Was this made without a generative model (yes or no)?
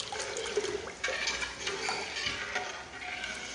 yes